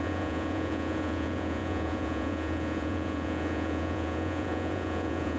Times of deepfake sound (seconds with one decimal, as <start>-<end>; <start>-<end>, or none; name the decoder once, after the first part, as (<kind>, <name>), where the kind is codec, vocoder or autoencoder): 0.0-5.4 (vocoder, Vocos)